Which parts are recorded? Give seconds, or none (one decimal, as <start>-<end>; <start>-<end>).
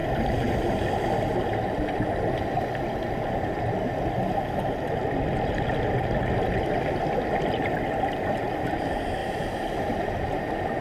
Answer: 0.0-10.8